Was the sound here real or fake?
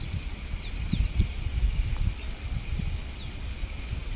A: real